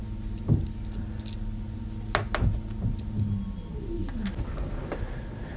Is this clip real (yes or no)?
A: yes